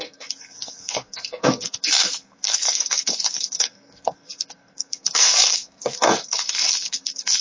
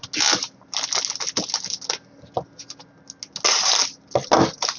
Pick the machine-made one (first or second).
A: first